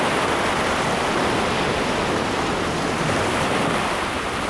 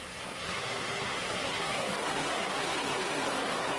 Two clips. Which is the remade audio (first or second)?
second